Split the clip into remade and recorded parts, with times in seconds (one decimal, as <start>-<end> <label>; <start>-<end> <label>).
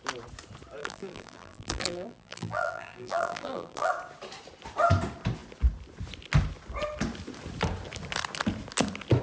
0.0-0.8 recorded; 0.8-3.9 remade; 3.9-9.2 recorded